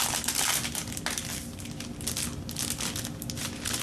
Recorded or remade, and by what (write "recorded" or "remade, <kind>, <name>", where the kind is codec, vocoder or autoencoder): recorded